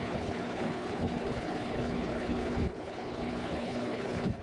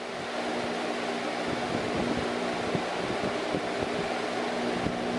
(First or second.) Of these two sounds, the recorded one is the second